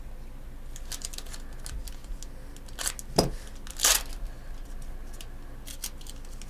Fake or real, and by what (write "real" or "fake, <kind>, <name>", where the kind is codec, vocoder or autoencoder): real